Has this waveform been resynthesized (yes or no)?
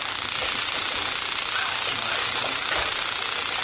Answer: no